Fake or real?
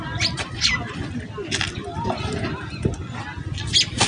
real